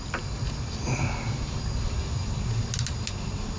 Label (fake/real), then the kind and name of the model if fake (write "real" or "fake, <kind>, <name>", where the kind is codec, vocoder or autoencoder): real